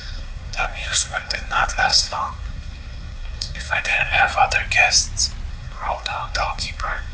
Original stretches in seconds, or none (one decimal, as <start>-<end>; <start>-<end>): 4.3-5.5